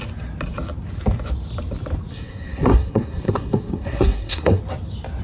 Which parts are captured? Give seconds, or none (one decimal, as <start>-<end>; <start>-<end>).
0.0-2.1; 4.6-5.2